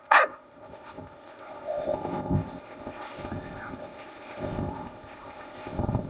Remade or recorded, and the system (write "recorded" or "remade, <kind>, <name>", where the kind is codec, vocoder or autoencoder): remade, codec, ZipCodec